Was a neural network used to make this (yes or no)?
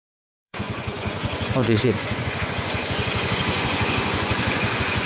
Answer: yes